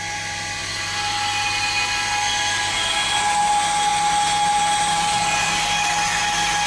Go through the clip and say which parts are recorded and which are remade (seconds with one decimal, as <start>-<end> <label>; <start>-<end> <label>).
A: 0.0-6.7 recorded